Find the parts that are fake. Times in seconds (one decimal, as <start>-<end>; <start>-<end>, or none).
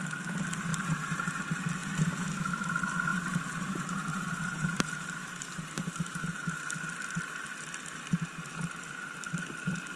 0.7-1.4; 1.8-2.7; 3.1-6.7